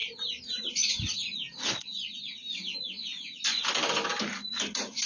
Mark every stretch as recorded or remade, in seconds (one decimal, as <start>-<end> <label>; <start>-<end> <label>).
0.0-3.1 recorded; 3.1-3.6 remade; 3.6-5.1 recorded